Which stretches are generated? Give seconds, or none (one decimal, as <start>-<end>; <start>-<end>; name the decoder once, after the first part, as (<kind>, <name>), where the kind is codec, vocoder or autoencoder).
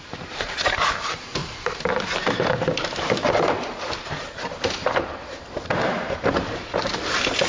0.0-7.5 (vocoder, BigVGAN v2)